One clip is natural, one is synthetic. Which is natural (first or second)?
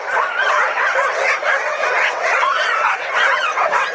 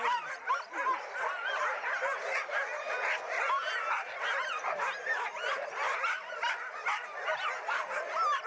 second